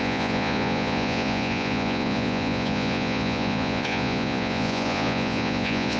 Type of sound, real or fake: fake